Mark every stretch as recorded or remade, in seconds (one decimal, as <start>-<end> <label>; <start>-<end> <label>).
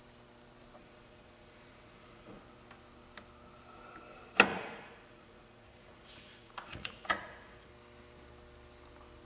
0.0-0.8 recorded; 0.8-2.4 remade; 2.4-4.5 recorded; 4.5-7.7 remade; 7.7-9.3 recorded